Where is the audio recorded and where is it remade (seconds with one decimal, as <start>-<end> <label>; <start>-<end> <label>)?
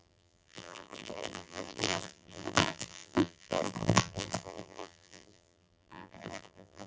0.0-6.9 remade